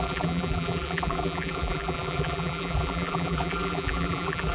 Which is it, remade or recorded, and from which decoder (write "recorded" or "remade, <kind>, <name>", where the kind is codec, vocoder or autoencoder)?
remade, vocoder, BigVGAN v2